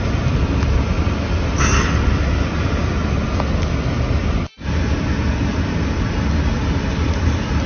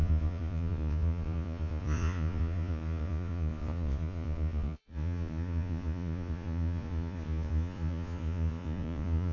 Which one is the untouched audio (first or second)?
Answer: first